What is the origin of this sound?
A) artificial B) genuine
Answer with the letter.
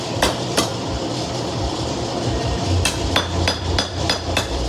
A